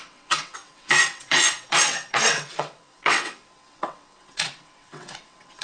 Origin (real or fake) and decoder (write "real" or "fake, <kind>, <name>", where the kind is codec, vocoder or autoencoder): fake, vocoder, WaveNeXt